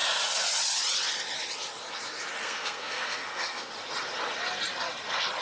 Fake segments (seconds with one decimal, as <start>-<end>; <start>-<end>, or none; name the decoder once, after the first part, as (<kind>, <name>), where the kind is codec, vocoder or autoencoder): 2.4-3.7 (codec, SNAC)

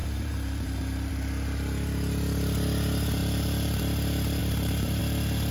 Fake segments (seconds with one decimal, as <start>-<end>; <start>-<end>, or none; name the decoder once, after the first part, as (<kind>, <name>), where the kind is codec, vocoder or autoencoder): 0.0-1.1 (vocoder, BigVGAN v2); 3.2-3.8; 4.4-5.0

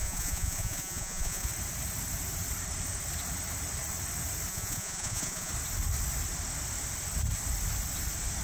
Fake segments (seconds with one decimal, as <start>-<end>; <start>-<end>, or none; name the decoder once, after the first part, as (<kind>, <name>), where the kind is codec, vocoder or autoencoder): 0.0-1.5 (vocoder, Vocos); 4.5-5.5

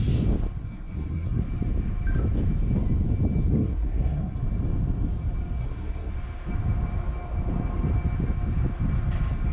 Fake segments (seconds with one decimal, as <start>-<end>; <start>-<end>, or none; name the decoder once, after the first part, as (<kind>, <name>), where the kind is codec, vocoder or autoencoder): 0.6-1.4 (codec, SNAC); 3.5-4.4; 5.6-6.1